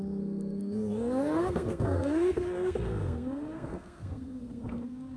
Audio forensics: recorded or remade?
remade